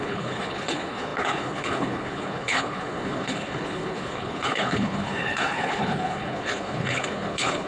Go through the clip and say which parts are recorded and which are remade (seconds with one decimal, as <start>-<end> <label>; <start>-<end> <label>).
0.0-7.7 remade